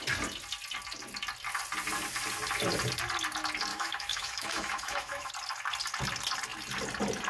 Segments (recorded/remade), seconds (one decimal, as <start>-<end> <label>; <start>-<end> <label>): 0.0-3.7 recorded; 3.7-5.3 remade; 5.3-7.3 recorded